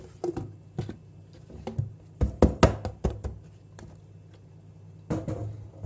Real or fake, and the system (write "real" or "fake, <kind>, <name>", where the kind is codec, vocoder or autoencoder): real